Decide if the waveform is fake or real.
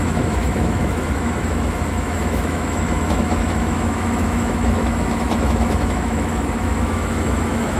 fake